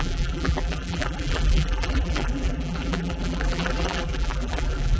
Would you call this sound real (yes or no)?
no